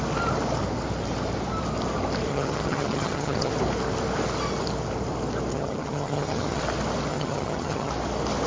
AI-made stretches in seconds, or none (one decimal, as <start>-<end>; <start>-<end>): 2.3-3.5; 5.5-6.6; 7.1-7.9